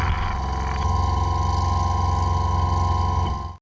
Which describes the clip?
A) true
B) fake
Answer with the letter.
A